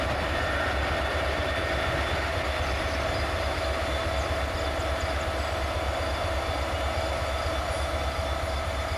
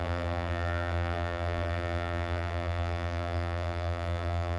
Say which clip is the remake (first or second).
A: second